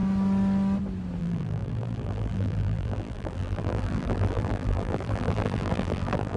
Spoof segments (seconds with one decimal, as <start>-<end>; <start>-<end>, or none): 1.2-6.4